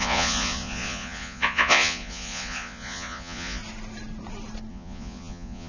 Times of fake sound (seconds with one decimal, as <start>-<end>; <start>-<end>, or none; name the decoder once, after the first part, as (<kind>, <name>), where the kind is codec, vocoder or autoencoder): 0.0-3.6 (vocoder, Vocos); 4.7-5.7